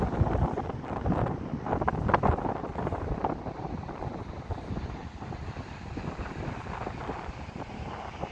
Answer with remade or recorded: recorded